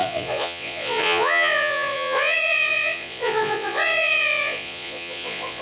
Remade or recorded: remade